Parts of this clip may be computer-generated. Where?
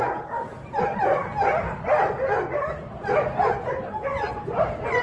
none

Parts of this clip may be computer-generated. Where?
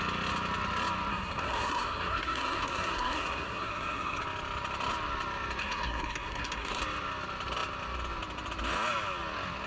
1.1-4.2; 5.6-6.8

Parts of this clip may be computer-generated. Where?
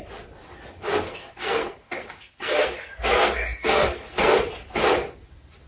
0.9-4.3